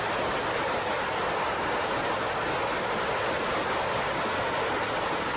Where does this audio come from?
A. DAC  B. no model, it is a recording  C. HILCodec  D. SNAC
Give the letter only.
B